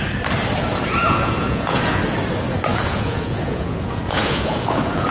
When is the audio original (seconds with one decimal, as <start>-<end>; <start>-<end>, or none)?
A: 0.0-1.0; 2.0-2.7